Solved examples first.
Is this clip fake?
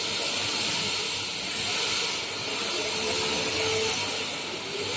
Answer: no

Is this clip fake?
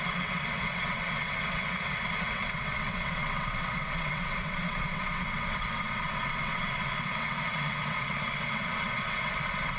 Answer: yes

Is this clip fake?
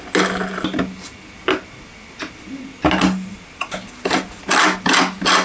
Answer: no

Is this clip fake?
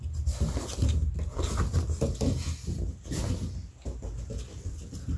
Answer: no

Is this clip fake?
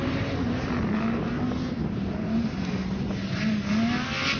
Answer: no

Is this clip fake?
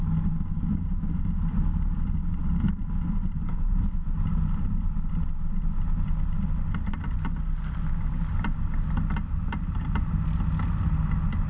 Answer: no